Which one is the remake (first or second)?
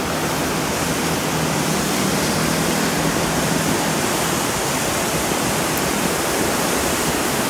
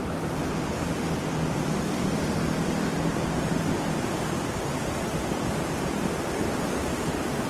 second